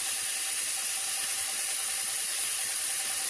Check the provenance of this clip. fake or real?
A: fake